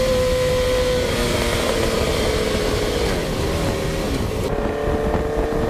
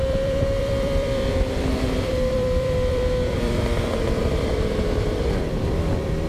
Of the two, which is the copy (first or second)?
second